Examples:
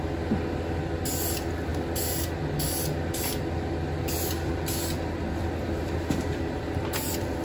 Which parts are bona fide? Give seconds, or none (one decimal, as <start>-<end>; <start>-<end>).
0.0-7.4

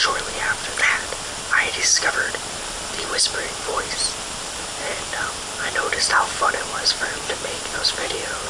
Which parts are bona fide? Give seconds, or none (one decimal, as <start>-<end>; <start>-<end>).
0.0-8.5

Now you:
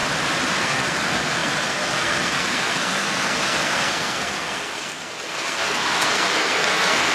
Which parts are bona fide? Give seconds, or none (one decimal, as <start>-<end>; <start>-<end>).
0.0-0.6

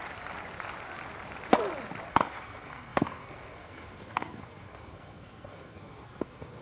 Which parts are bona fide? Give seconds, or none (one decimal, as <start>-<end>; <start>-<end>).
0.0-2.1

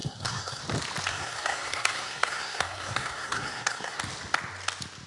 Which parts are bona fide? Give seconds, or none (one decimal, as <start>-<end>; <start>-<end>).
0.6-1.1; 4.0-5.1